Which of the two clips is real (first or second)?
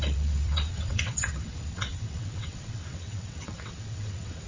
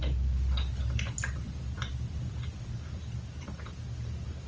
second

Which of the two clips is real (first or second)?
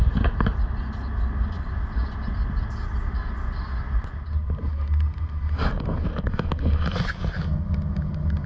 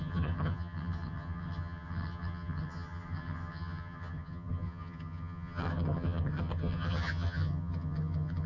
first